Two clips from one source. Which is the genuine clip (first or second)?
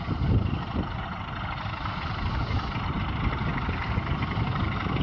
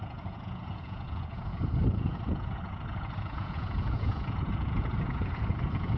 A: first